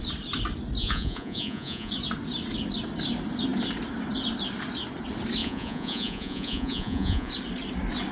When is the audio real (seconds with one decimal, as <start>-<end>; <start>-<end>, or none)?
0.0-0.8; 1.9-5.4; 7.3-8.1